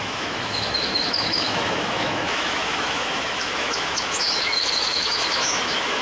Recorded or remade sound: remade